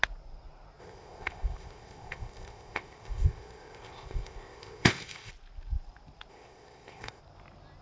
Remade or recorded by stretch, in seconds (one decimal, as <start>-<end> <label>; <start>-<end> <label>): 0.0-0.8 recorded; 0.8-5.3 remade; 5.3-6.3 recorded; 6.3-7.2 remade; 7.2-7.8 recorded

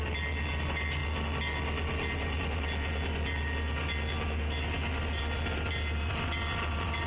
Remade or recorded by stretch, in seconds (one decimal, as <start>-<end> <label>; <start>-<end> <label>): 0.0-7.1 recorded

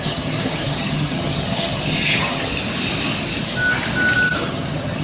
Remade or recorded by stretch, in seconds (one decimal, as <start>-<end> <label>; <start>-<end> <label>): 0.0-2.5 remade; 2.5-4.4 recorded; 4.4-5.0 remade

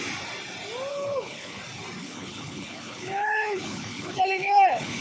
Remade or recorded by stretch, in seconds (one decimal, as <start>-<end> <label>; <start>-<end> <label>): 0.0-0.9 recorded; 0.9-1.6 remade; 1.6-2.0 recorded; 2.0-5.0 remade

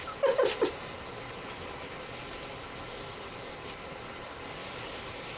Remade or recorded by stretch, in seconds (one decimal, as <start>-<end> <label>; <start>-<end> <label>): 0.0-5.4 recorded

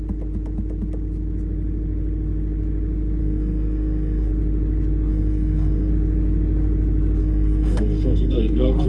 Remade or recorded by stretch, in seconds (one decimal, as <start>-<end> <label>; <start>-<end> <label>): 0.0-3.2 recorded; 3.2-4.3 remade; 4.3-5.1 recorded; 5.1-5.9 remade; 5.9-7.2 recorded; 7.2-8.9 remade